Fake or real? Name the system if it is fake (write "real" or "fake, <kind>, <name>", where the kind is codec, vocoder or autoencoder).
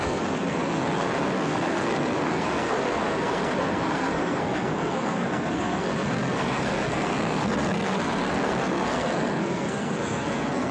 fake, codec, SNAC